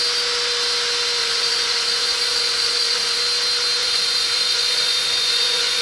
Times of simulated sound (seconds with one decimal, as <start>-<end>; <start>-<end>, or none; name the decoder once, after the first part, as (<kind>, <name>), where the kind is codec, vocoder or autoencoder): 1.2-3.2 (vocoder, Vocos); 3.8-5.8

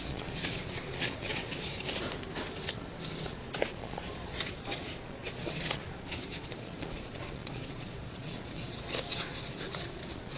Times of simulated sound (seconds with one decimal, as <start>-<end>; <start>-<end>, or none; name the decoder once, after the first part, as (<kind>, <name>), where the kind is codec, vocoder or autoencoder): 0.0-1.7 (vocoder, Vocos); 2.7-10.4

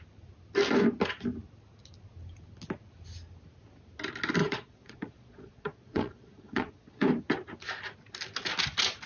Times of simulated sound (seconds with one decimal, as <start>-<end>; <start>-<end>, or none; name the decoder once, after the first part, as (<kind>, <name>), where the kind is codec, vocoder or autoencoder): 4.4-7.1 (vocoder, Vocos)

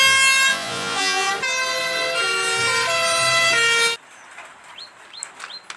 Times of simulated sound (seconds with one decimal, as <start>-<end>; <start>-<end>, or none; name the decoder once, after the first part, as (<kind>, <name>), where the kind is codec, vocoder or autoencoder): 0.5-1.3 (vocoder, Vocos)